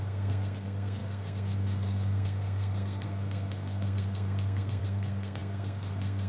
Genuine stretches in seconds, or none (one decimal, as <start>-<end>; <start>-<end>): none